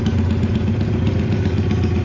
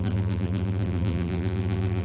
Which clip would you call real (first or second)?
first